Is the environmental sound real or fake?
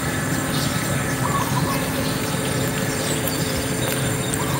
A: fake